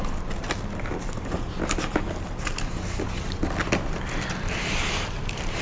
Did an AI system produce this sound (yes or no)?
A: no